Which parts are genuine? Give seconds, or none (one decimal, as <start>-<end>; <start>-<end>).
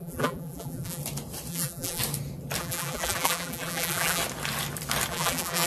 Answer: 1.0-1.5; 2.0-2.6; 4.2-5.1